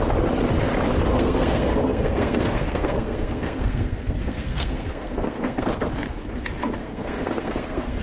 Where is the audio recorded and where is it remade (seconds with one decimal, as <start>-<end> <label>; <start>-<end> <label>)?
0.0-1.1 recorded; 1.1-5.9 remade; 5.9-6.8 recorded; 6.8-8.0 remade